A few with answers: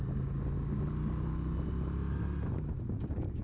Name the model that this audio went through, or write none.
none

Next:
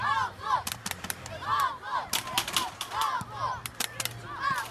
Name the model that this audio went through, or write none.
none